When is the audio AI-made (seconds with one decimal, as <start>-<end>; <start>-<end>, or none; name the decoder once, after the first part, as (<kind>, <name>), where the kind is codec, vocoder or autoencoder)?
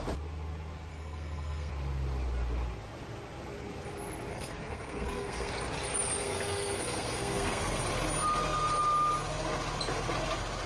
0.9-1.7 (codec, SNAC); 4.3-5.5; 6.2-7.8